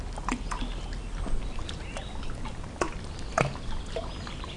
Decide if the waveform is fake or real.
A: real